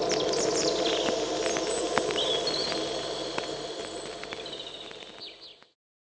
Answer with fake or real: real